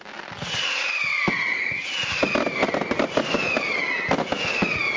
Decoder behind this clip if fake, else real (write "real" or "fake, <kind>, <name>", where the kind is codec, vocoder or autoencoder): real